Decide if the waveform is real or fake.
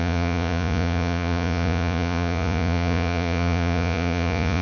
fake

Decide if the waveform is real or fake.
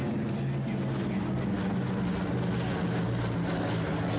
real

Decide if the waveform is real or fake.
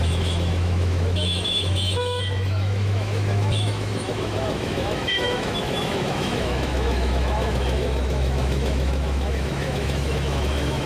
fake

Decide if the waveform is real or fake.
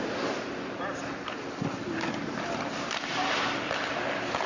real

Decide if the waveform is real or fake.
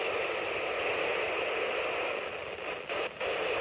real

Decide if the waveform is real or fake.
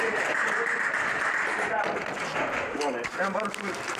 real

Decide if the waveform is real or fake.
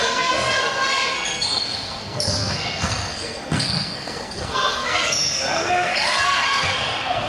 fake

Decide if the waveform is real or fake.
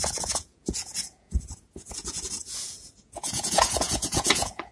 fake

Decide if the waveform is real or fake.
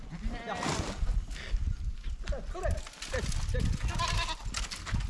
real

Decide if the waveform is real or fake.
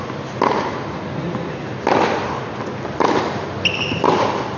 real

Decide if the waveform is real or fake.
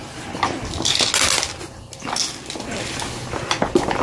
real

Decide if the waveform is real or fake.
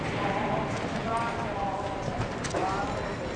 real